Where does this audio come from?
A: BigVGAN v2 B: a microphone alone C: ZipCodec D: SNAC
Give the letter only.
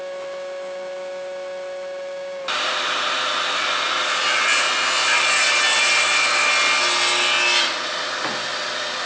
B